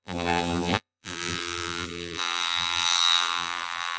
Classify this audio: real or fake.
fake